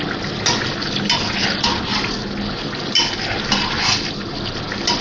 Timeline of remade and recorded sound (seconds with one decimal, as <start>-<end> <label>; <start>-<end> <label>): 0.0-5.0 recorded